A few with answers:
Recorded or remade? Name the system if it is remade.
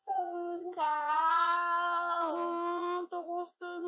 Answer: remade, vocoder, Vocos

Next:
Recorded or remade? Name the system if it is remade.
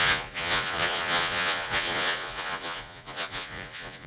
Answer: remade, vocoder, Vocos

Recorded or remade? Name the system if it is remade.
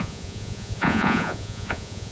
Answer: remade, vocoder, Vocos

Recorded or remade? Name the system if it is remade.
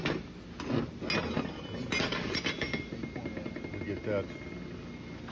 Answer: recorded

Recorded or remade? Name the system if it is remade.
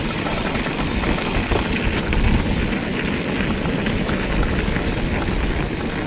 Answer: recorded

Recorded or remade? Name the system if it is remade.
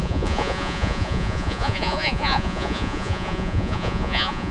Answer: remade, vocoder, Vocos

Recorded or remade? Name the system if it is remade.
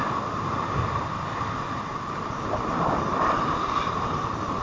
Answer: recorded